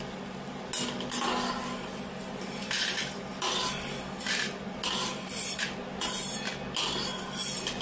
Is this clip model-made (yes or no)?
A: no